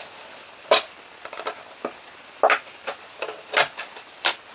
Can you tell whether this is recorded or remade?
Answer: recorded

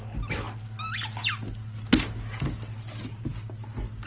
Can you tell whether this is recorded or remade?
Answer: recorded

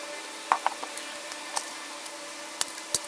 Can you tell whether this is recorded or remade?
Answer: recorded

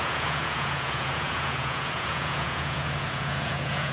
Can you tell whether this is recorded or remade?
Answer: remade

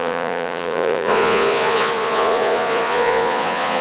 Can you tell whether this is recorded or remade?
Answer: remade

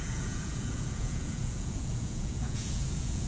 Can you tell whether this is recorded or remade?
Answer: remade